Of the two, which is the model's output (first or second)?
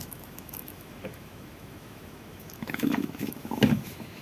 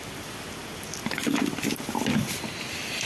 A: first